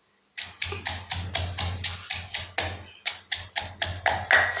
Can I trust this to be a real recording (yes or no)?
yes